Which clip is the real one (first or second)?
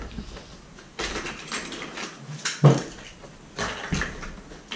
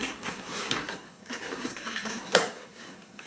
first